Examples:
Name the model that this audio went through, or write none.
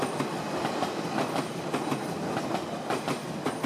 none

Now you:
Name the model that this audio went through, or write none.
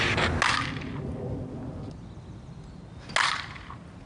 none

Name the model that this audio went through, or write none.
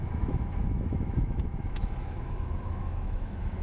autoencoder, DAC-VAE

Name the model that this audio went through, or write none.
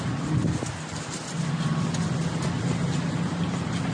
none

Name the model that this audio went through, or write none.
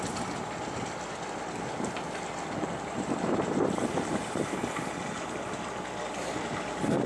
none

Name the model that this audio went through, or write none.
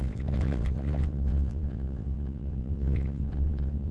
vocoder, WaveNeXt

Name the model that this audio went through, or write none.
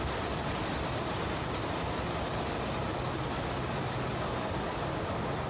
none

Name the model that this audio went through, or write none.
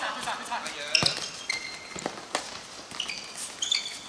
none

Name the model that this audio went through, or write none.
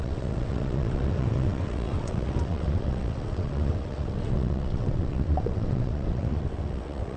vocoder, WaveNeXt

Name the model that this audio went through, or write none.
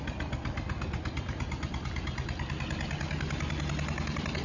none